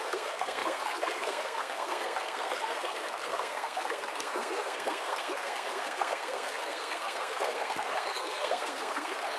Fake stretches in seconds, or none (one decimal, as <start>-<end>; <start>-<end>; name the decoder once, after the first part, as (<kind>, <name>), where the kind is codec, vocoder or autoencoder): 0.0-9.4 (codec, SNAC)